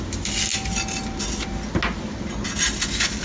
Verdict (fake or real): real